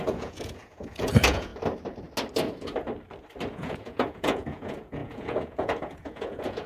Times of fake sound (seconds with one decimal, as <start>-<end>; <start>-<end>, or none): 0.0-1.5; 3.5-6.7